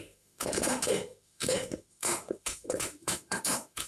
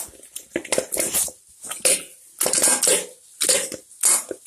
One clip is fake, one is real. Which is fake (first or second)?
first